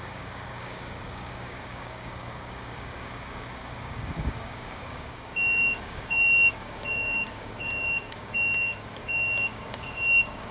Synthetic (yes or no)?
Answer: yes